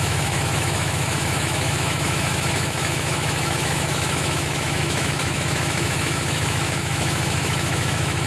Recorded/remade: remade